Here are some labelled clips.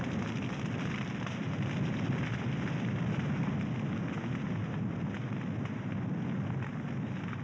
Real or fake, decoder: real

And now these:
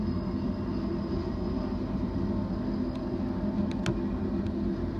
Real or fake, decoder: real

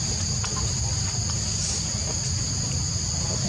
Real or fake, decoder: real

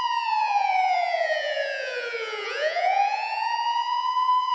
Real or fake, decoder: fake, vocoder, Vocos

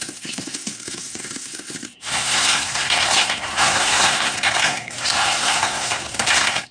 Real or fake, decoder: fake, codec, SNAC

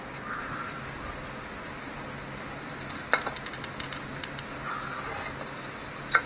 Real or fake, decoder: real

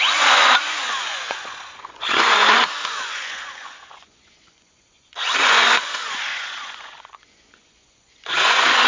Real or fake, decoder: fake, vocoder, Vocos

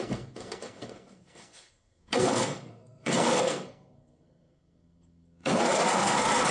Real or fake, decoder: fake, codec, SNAC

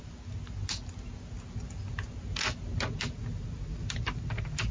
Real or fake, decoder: real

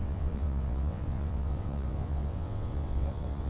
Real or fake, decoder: fake, vocoder, WaveNeXt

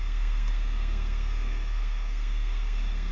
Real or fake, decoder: fake, codec, SNAC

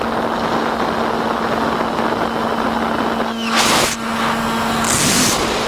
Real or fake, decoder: real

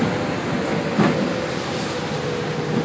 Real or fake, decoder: real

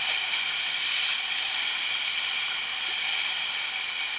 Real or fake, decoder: real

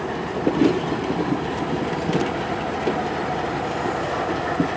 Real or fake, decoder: real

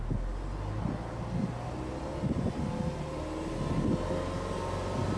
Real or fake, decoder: real